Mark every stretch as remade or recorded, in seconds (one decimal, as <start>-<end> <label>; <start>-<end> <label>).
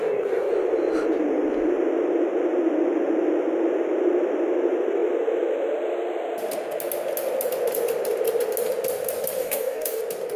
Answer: 0.0-0.5 remade; 0.5-9.4 recorded; 9.4-10.0 remade; 10.0-10.4 recorded